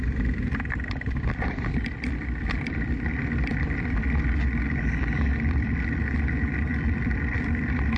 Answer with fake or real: fake